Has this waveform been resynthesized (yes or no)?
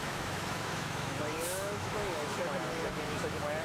yes